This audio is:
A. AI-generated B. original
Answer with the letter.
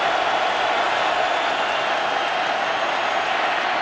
B